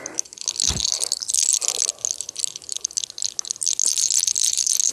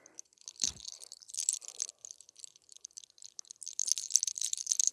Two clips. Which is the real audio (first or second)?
first